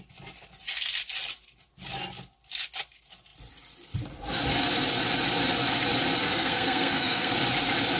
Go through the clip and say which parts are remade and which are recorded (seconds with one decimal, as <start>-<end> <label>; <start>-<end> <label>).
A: 0.0-6.2 recorded; 6.2-7.3 remade; 7.3-8.0 recorded